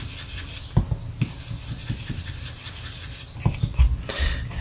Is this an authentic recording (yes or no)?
yes